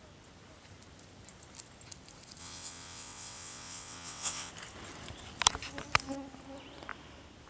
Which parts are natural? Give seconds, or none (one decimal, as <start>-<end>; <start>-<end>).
0.0-2.4; 4.5-7.5